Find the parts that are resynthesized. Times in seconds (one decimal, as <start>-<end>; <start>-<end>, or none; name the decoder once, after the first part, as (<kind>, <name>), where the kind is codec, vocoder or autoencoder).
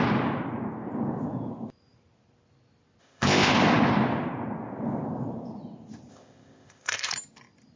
3.0-3.5 (codec, ZipCodec); 6.1-7.1